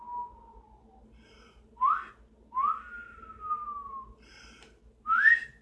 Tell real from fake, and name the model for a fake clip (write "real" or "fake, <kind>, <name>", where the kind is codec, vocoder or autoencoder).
real